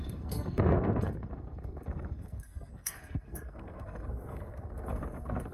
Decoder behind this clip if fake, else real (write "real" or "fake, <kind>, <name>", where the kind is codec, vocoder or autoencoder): fake, codec, SNAC